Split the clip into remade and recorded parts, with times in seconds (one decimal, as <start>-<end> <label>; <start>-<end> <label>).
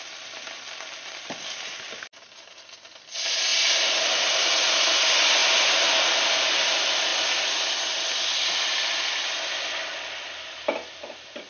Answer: 0.0-11.5 recorded